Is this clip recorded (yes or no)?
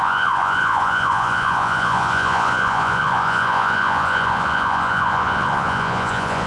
no